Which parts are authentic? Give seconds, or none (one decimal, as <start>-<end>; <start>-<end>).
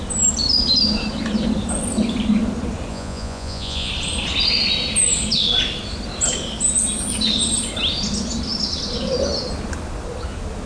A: 0.0-2.9; 3.9-10.7